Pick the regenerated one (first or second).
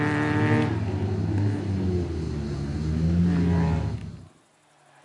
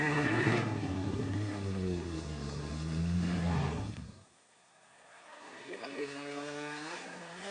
second